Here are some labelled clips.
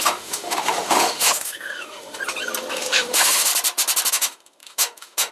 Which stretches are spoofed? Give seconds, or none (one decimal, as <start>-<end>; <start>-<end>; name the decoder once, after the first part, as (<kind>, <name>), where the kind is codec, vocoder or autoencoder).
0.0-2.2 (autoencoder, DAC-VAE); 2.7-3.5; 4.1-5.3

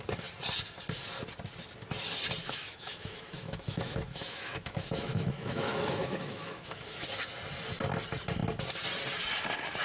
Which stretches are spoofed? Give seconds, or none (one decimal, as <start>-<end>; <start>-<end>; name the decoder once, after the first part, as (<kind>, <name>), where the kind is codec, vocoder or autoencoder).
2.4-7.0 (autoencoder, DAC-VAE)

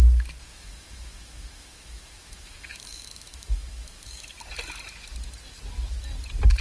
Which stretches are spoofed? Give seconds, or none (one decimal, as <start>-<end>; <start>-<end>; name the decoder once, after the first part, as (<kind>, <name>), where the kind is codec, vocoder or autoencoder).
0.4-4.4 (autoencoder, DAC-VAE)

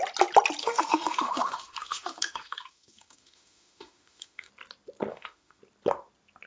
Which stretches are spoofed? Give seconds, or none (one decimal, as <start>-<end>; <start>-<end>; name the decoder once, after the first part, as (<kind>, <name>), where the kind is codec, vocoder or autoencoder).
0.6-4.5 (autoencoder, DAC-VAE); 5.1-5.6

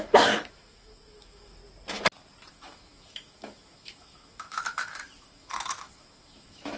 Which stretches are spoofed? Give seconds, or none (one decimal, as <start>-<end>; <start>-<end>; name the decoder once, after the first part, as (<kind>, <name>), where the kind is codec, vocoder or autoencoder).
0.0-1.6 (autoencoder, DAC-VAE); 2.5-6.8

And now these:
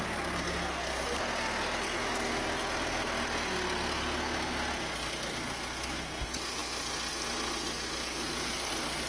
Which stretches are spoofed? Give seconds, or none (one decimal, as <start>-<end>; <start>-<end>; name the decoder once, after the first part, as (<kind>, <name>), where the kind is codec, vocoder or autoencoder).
none

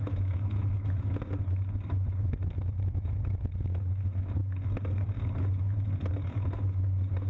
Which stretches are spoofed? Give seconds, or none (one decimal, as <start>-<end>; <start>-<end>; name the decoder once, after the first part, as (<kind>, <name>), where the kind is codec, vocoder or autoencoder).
0.0-4.4 (autoencoder, DAC-VAE); 6.1-7.3

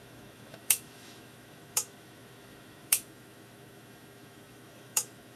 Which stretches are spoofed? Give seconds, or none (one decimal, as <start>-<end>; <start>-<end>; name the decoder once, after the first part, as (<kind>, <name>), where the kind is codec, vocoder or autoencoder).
0.0-5.4 (autoencoder, DAC-VAE)